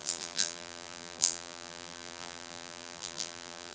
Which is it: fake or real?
fake